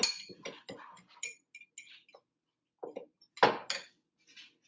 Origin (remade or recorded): recorded